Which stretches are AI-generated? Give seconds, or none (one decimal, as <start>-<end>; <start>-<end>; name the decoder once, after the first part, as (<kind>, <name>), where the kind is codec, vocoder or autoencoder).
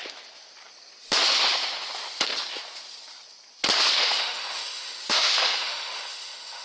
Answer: 4.0-6.6 (autoencoder, DAC-VAE)